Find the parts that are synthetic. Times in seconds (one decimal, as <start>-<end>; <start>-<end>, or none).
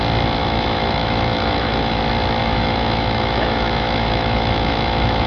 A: 0.4-2.0; 2.4-5.3